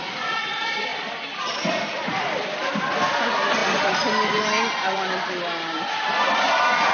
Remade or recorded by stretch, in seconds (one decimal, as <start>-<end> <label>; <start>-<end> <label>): 0.0-6.9 recorded